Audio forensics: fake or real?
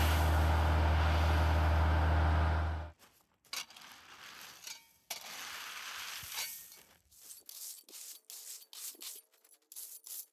real